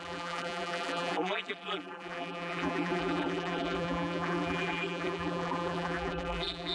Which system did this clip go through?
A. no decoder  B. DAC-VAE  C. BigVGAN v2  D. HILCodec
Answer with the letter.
C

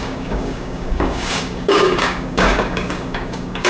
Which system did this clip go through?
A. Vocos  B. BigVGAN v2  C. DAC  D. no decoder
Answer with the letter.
C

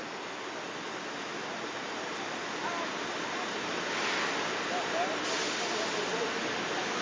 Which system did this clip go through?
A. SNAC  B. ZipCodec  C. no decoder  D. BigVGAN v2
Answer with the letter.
C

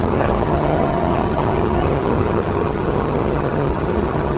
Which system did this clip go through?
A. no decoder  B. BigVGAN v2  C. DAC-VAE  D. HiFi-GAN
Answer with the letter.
D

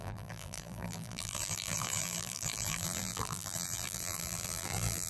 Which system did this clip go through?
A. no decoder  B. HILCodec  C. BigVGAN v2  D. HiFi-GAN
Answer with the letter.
C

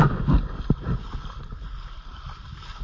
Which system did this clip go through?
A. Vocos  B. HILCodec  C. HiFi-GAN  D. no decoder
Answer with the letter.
D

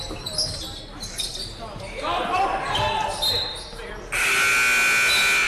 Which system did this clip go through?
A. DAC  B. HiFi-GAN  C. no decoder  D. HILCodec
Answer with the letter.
C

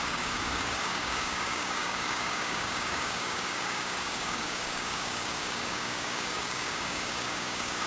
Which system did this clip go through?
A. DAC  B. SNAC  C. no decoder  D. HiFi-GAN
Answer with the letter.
A